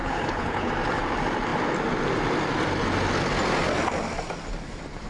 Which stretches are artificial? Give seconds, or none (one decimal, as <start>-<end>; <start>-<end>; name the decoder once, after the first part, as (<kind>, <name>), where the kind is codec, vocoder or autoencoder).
0.0-0.7 (codec, HILCodec)

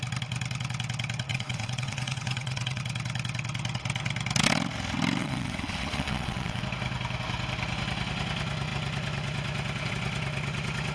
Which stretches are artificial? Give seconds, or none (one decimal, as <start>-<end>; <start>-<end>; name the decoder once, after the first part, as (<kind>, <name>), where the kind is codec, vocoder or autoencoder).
1.3-2.8 (vocoder, WaveNeXt); 5.2-6.6